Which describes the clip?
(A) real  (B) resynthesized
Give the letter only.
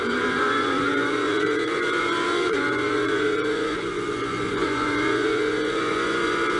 B